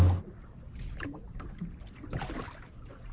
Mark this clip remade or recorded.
recorded